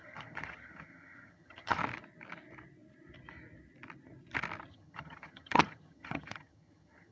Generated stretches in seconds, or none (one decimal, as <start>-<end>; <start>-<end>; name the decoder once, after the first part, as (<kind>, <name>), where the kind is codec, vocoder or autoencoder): 0.0-1.8 (vocoder, HiFi-GAN); 4.7-7.1